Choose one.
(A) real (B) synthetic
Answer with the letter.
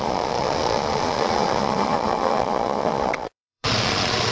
B